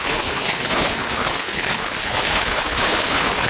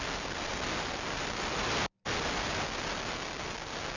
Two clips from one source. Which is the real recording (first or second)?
second